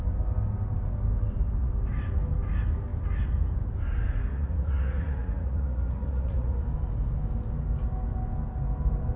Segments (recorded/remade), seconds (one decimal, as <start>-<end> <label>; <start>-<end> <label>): 0.0-4.3 recorded; 4.3-6.6 remade; 6.6-9.2 recorded